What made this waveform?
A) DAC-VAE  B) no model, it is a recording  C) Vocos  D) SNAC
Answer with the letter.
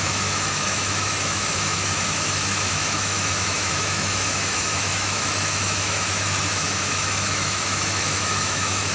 A